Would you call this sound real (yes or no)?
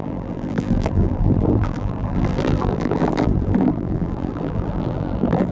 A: no